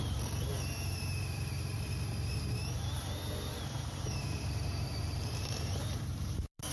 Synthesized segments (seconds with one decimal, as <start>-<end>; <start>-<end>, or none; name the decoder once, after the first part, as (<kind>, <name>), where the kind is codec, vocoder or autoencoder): 0.0-0.5 (vocoder, BigVGAN v2); 1.2-6.7